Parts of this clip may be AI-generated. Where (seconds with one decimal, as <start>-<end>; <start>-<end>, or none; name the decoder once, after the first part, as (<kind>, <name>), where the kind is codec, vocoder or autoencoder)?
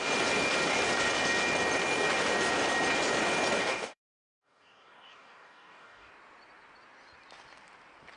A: 3.6-6.1 (codec, DAC)